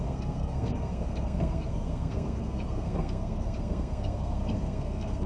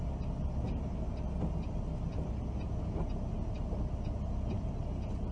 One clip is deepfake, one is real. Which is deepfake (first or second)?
first